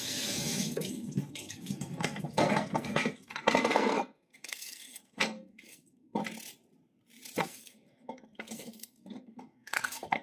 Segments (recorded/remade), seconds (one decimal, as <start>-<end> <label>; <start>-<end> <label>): 0.0-6.2 remade; 6.2-7.4 recorded; 7.4-10.2 remade